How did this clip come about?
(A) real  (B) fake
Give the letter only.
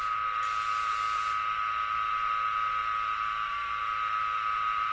B